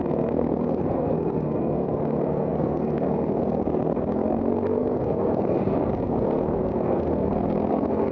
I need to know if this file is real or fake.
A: fake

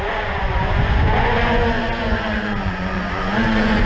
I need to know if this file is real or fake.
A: fake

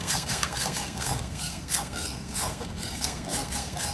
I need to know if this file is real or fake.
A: fake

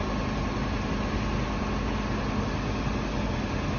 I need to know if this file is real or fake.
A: real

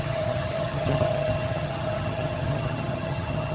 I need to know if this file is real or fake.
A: fake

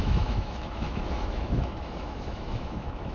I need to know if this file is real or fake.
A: fake